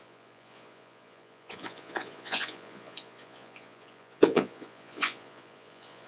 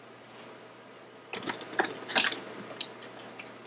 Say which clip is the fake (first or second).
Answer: first